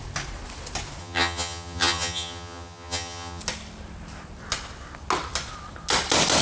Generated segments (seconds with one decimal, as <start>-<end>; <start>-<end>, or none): 1.0-3.4